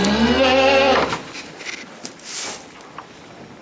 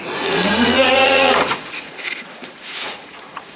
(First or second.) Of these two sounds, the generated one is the second